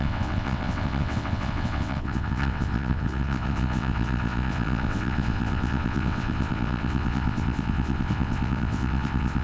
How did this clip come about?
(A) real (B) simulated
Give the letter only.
B